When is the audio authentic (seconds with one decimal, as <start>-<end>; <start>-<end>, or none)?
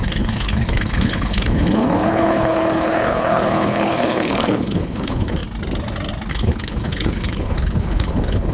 5.4-6.3